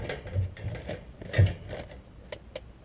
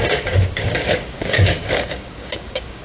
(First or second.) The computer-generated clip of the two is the second